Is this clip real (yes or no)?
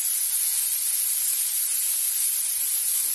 yes